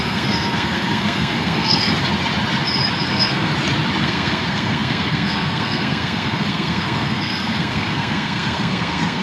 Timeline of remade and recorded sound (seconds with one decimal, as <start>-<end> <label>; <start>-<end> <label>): 0.0-1.9 remade; 1.9-3.1 recorded; 3.1-3.5 remade; 3.5-4.0 recorded; 4.0-9.2 remade